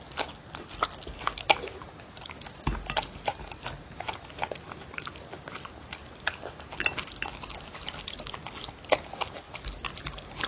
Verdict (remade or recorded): recorded